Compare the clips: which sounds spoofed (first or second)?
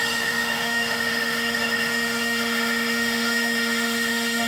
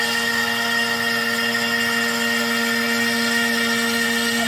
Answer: first